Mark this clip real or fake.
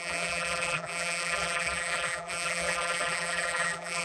fake